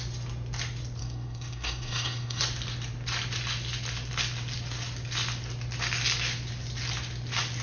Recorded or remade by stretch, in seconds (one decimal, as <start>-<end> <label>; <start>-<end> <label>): 0.0-1.0 recorded; 1.0-2.4 remade; 2.4-7.6 recorded